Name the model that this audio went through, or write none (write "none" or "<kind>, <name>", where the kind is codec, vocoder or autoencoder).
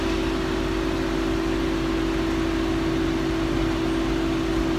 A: none